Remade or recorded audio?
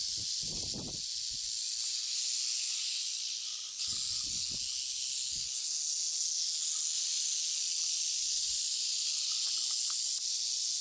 recorded